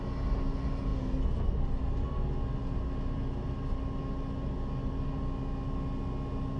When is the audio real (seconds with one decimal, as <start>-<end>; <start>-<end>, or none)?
0.0-6.6